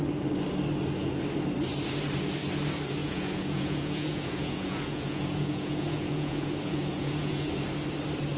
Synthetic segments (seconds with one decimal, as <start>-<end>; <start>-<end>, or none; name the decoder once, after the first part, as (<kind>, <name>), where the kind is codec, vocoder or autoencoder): 3.0-7.5 (vocoder, Vocos)